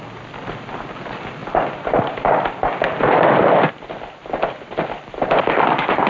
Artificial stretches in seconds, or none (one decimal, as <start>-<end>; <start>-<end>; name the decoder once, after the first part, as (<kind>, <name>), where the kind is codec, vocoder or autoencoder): none